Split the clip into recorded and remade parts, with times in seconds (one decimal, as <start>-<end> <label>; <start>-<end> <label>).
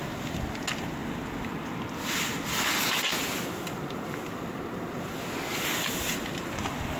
0.0-7.0 recorded